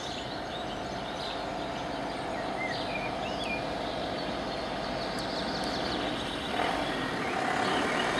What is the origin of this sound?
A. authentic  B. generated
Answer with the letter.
A